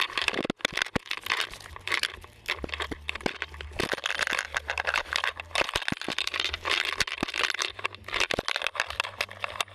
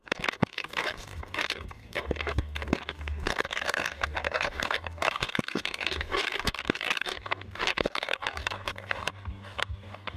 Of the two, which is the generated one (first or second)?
second